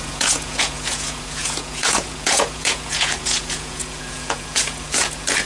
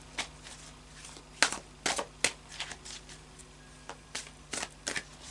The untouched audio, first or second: second